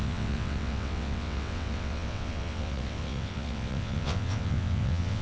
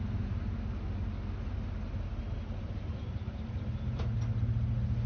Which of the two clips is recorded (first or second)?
second